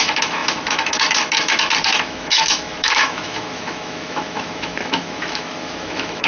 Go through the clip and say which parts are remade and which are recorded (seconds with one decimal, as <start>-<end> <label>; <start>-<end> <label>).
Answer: 0.0-6.3 remade